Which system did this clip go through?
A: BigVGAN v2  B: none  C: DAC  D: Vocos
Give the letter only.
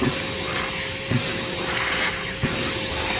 B